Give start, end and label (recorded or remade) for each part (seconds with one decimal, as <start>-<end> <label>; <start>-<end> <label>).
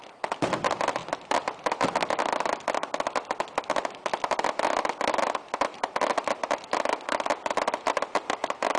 0.0-8.8 recorded